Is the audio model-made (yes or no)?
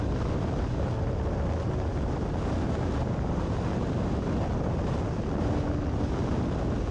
no